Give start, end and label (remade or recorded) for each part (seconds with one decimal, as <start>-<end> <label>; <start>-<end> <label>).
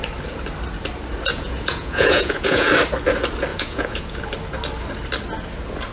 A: 0.0-1.3 recorded; 1.3-2.7 remade; 2.7-3.5 recorded; 3.5-4.2 remade; 4.2-5.9 recorded